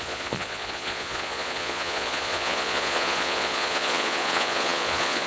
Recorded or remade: remade